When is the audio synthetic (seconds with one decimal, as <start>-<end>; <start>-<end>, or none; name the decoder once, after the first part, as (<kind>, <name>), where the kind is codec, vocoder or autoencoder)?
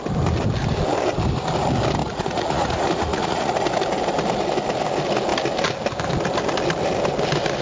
2.0-3.5 (vocoder, Vocos)